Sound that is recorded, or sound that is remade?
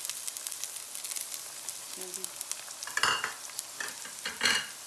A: recorded